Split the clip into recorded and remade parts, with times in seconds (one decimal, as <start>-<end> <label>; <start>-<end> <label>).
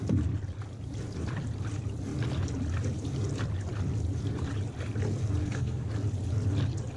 0.0-5.4 recorded; 5.4-5.9 remade; 5.9-7.0 recorded